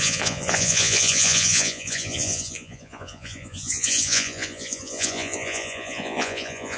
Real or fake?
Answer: fake